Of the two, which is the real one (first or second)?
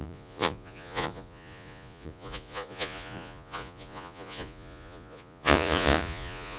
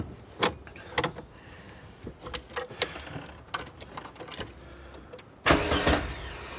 second